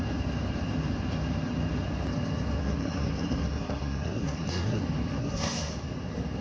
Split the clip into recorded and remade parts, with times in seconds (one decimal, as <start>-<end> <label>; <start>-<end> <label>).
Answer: 0.0-2.6 recorded; 2.6-4.8 remade; 4.8-5.2 recorded; 5.2-5.7 remade; 5.7-6.4 recorded